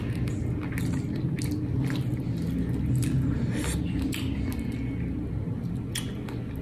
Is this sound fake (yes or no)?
no